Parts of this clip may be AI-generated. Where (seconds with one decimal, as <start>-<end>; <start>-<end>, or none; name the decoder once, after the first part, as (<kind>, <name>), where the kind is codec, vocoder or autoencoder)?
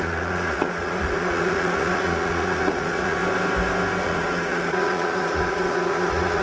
0.0-3.2 (vocoder, Vocos); 4.0-6.4